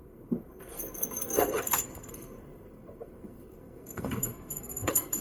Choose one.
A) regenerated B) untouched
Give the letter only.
A